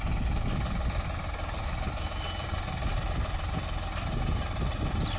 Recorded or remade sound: recorded